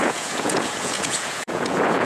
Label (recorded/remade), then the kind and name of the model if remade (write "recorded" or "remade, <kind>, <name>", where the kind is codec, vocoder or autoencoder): remade, vocoder, Vocos